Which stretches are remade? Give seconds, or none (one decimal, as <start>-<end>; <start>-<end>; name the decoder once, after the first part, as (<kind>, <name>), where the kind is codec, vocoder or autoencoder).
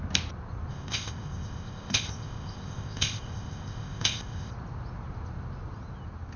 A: 0.7-4.5 (codec, ZipCodec)